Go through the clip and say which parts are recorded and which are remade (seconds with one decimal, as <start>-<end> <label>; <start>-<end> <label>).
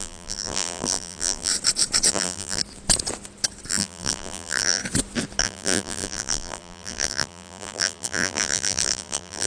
0.0-1.5 remade; 1.5-2.1 recorded; 2.1-2.6 remade; 2.6-3.7 recorded; 3.7-4.8 remade; 4.8-5.4 recorded; 5.4-9.5 remade